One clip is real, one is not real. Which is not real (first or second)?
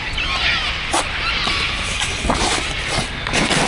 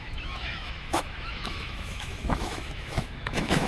second